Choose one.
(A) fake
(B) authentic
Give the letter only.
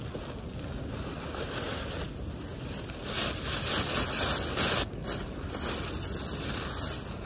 B